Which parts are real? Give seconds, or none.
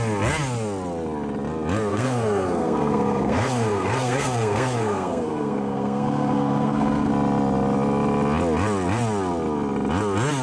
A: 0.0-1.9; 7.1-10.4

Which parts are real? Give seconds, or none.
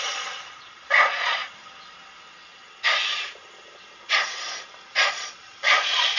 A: 1.4-5.1